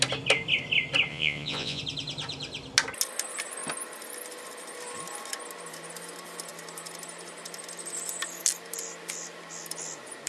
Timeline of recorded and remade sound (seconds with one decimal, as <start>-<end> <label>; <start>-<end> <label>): 0.0-1.1 recorded; 1.1-1.8 remade; 1.8-10.3 recorded

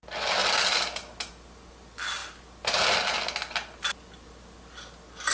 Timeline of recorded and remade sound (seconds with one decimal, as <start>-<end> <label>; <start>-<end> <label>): 0.0-5.3 recorded

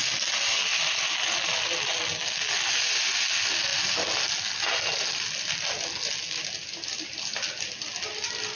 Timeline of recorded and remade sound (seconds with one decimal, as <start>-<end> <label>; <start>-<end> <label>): 0.0-8.6 recorded